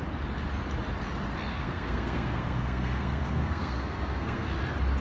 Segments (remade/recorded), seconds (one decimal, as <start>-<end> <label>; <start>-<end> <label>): 0.0-1.5 recorded; 1.5-4.5 remade; 4.5-5.0 recorded